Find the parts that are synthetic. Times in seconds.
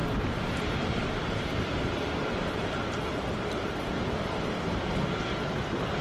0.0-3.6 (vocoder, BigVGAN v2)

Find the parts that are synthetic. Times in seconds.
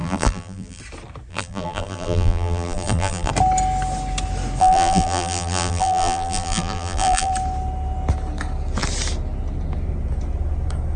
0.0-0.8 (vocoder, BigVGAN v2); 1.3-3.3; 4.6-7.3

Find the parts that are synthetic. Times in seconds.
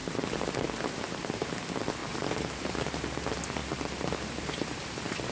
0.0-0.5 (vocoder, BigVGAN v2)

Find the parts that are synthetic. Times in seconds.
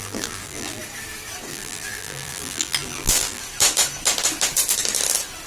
0.0-0.8 (vocoder, BigVGAN v2); 1.5-3.4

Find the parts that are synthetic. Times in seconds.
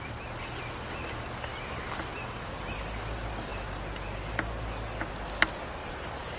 5.8-6.4 (vocoder, BigVGAN v2)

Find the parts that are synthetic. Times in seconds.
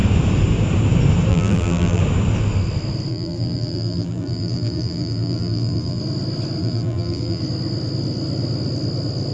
1.3-2.0 (vocoder, BigVGAN v2); 3.1-6.0; 6.6-7.4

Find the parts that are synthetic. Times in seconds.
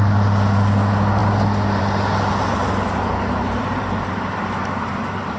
2.3-4.9 (vocoder, BigVGAN v2)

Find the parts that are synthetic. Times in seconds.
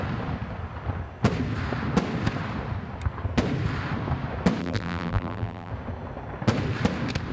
4.6-5.7 (vocoder, BigVGAN v2)